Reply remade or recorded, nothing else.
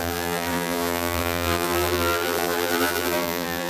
remade